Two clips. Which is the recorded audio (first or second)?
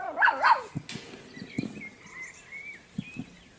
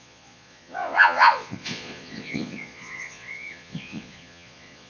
first